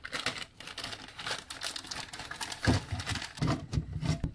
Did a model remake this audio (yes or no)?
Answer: no